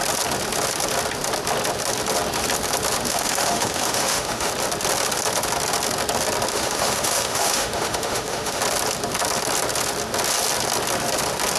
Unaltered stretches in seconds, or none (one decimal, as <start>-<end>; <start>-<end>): 0.0-3.1; 4.5-6.5; 8.6-11.6